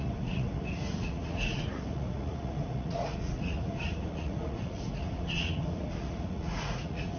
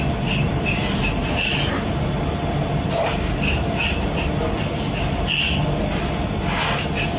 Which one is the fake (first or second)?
first